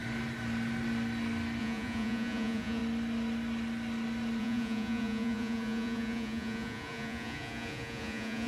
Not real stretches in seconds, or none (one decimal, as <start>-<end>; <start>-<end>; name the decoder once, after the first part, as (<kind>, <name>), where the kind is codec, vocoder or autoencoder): 1.6-2.8 (vocoder, Vocos); 4.4-8.5